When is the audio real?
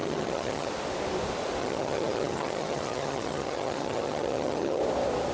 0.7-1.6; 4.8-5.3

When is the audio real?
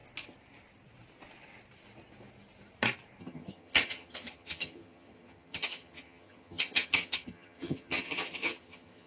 0.0-3.2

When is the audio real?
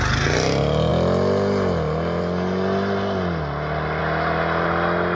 0.0-5.1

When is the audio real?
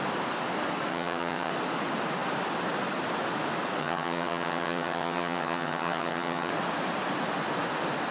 0.0-0.9; 1.5-3.8; 6.5-8.1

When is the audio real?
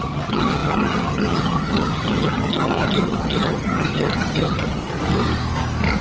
4.8-6.0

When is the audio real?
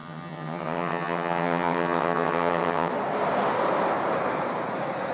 2.9-5.1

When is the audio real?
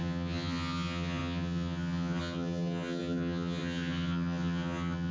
none